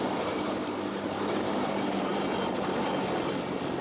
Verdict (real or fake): real